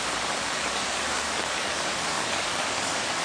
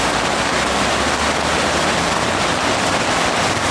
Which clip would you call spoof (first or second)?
first